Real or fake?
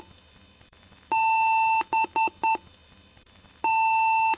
real